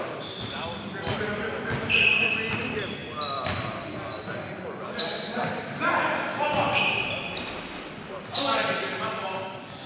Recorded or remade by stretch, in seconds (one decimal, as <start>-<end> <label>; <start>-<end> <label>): 0.0-9.9 recorded